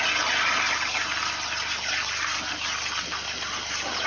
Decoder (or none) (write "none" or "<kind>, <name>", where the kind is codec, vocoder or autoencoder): none